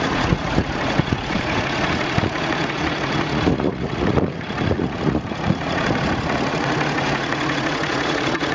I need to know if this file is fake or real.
fake